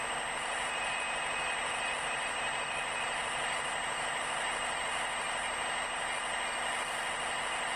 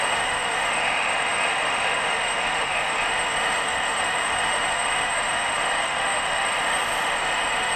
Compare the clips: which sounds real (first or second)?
first